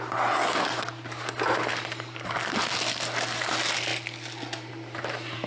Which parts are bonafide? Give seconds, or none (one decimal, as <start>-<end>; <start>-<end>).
0.0-5.5